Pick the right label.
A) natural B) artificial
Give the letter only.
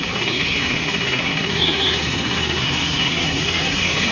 B